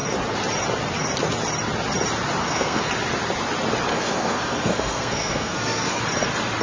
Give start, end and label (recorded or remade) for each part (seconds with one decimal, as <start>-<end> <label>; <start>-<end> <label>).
0.0-2.4 recorded; 2.4-2.9 remade; 2.9-3.9 recorded; 3.9-6.0 remade; 6.0-6.6 recorded